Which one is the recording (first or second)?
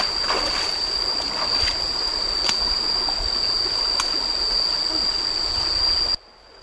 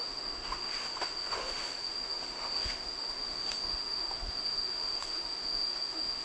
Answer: first